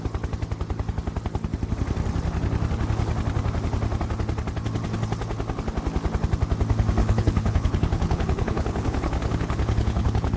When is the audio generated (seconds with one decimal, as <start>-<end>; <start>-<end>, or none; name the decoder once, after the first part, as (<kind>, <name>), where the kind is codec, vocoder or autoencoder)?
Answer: 7.0-10.4 (codec, HILCodec)